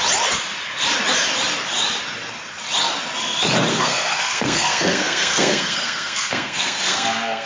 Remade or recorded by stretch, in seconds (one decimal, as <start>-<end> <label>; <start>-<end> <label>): 0.0-3.7 recorded; 3.7-7.5 remade